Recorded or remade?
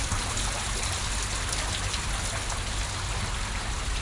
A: recorded